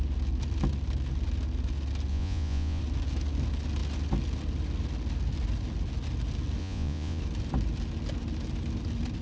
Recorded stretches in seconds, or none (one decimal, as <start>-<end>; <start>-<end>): 0.0-2.1; 2.8-6.6; 7.2-9.2